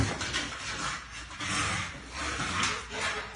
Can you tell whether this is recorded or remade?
recorded